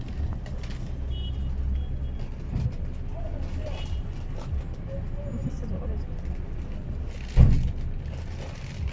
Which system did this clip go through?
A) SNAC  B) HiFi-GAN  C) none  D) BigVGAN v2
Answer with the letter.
C